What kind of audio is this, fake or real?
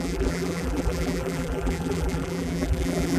fake